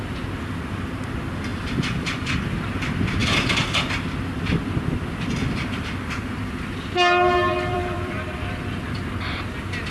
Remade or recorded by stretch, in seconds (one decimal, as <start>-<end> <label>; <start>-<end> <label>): 0.0-7.5 recorded; 7.5-8.8 remade; 8.8-9.9 recorded